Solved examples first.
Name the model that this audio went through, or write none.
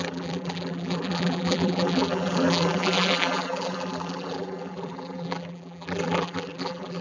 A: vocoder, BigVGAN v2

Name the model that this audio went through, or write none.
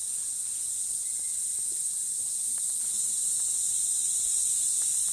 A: none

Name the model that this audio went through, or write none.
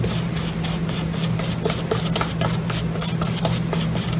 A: none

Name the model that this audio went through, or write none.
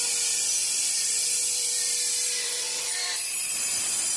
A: vocoder, BigVGAN v2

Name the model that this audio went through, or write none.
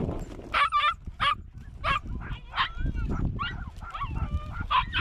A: none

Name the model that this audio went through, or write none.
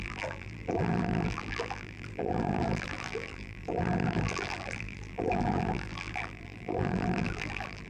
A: vocoder, BigVGAN v2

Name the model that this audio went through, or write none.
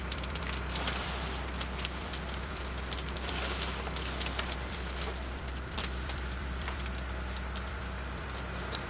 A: vocoder, BigVGAN v2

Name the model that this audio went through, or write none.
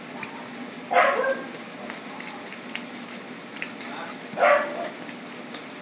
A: none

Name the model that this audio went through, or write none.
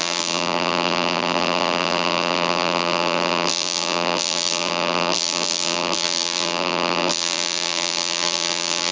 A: vocoder, BigVGAN v2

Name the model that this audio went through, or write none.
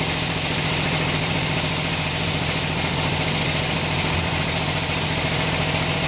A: vocoder, BigVGAN v2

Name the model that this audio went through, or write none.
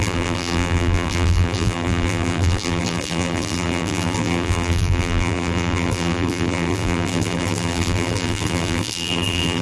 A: vocoder, BigVGAN v2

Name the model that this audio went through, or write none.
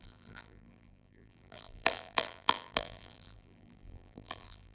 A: vocoder, BigVGAN v2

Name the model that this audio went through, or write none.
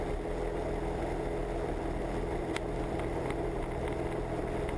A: none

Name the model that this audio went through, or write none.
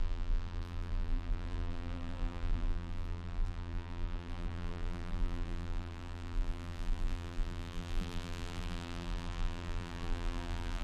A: vocoder, BigVGAN v2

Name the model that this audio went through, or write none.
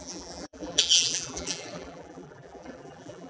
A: vocoder, BigVGAN v2